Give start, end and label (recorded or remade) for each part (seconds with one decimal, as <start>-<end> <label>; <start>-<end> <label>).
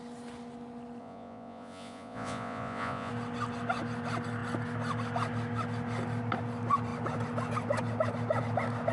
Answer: 0.0-1.0 recorded; 1.0-3.1 remade; 3.1-8.9 recorded